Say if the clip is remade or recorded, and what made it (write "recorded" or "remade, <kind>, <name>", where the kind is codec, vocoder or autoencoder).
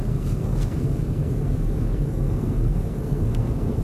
remade, codec, SNAC